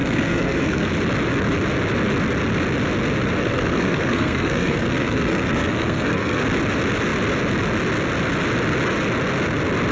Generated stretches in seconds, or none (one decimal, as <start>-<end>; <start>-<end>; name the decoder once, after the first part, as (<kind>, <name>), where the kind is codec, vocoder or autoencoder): 0.0-0.9 (codec, SNAC); 3.4-6.4